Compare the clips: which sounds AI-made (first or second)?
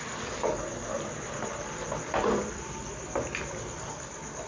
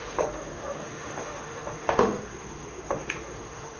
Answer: second